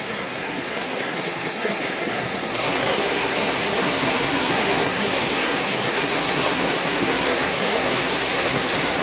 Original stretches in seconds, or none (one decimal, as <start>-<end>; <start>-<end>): none